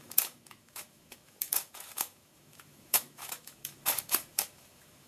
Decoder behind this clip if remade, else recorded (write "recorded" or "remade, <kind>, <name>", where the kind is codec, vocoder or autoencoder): remade, autoencoder, DAC-VAE